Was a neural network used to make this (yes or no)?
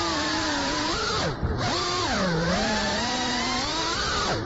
yes